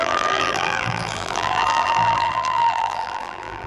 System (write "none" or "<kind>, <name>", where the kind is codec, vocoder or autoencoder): vocoder, BigVGAN v2